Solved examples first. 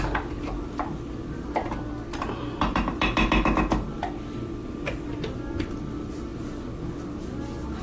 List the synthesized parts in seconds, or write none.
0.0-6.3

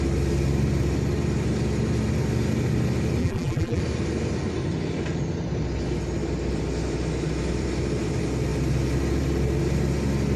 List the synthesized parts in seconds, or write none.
3.2-3.8

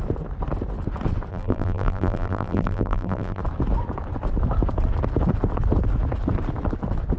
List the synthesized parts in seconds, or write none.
1.3-3.4

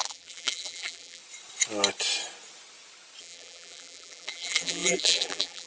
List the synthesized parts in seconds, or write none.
0.0-1.2; 3.2-5.7

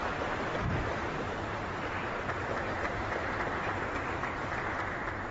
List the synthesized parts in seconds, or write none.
0.5-3.7

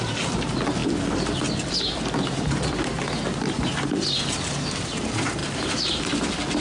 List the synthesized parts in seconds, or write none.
5.4-6.6

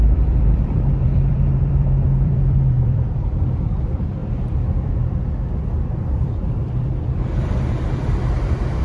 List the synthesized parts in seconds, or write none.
0.0-4.2; 5.9-8.8

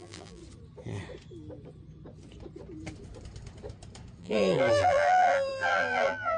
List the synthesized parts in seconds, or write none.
0.0-0.4; 4.2-6.4